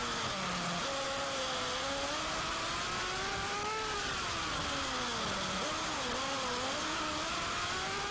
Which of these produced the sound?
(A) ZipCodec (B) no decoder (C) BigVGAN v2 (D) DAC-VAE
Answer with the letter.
B